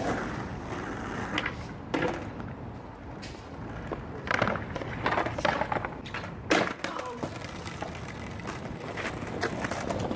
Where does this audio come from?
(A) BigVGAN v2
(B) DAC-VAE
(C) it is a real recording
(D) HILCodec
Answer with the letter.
C